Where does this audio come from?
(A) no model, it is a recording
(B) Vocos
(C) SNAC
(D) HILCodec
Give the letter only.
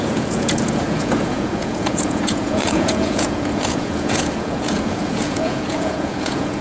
B